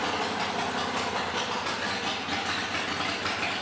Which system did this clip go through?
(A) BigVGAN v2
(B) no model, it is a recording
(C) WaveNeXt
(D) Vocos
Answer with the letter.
B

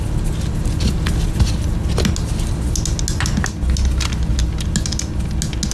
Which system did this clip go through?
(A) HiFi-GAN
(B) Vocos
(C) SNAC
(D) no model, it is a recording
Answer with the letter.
D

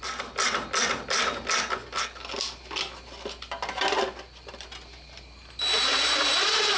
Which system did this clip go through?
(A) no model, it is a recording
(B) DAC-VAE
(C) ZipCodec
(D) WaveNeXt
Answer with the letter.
A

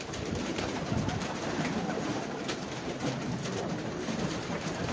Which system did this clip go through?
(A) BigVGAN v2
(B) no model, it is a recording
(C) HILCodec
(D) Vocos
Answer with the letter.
A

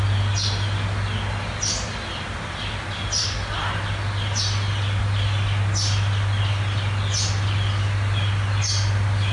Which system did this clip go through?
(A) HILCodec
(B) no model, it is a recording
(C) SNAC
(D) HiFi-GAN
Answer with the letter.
B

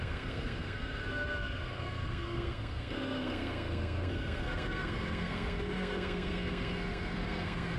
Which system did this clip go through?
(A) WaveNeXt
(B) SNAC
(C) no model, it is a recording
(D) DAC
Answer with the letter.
B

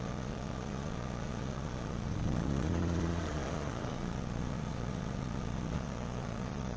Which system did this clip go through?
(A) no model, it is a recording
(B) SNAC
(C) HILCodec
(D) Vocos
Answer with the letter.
D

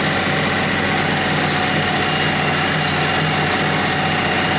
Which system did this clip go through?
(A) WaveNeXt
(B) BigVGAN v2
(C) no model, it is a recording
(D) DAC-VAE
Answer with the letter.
C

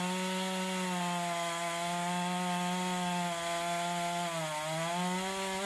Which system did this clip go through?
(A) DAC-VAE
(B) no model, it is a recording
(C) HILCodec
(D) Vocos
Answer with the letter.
B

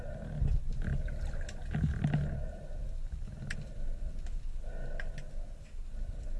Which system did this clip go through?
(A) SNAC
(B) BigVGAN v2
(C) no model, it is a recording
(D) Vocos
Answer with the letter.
C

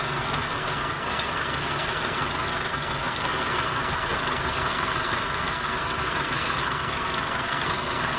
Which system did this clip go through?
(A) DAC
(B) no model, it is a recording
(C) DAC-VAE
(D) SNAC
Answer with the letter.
D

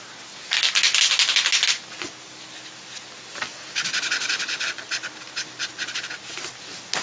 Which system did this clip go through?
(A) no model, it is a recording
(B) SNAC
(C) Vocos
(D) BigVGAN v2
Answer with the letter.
A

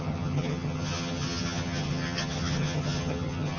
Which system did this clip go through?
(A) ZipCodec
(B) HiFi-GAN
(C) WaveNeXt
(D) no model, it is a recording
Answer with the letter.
B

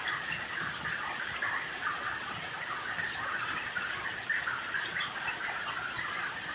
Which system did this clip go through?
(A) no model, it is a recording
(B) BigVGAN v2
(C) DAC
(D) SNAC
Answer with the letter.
A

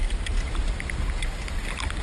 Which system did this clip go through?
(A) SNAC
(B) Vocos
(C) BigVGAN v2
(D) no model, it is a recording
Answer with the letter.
D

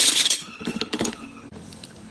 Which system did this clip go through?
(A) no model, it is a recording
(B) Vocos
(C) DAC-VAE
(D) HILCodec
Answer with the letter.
D